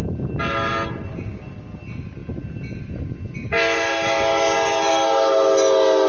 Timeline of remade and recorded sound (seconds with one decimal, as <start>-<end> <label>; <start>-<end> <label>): 0.0-6.1 recorded